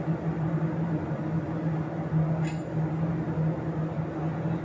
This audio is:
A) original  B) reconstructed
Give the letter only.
A